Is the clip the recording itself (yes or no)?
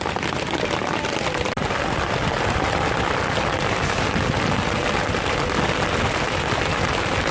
yes